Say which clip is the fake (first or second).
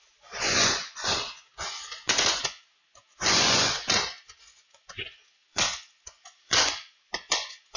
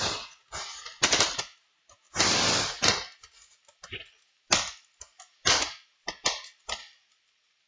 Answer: first